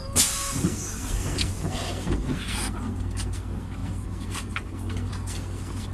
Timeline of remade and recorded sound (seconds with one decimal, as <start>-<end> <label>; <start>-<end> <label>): 0.0-5.9 remade